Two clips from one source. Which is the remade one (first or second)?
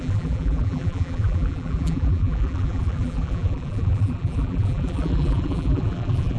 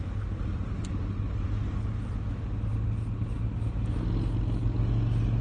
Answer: first